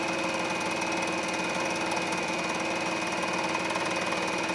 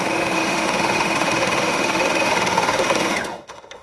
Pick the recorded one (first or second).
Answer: first